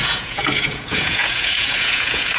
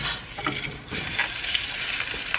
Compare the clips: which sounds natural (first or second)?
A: second